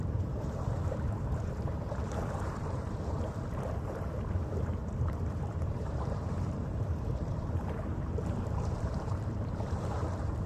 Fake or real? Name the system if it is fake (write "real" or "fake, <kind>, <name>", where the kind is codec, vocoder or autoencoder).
fake, vocoder, BigVGAN v2